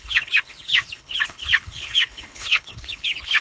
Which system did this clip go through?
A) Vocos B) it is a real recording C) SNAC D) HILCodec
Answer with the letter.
D